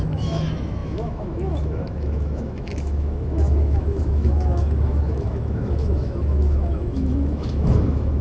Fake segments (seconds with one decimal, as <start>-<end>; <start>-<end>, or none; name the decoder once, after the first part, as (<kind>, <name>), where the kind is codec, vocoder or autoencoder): 0.0-8.2 (autoencoder, DAC-VAE)